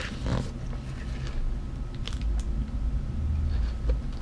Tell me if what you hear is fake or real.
real